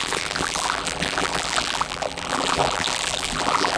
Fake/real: fake